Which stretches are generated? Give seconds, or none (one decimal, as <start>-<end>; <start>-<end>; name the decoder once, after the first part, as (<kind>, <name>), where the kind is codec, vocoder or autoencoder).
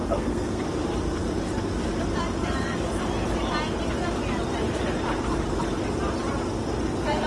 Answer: 0.0-0.6 (codec, SNAC)